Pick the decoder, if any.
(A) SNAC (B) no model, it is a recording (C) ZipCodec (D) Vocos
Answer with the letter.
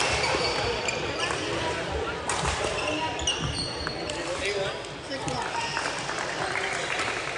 B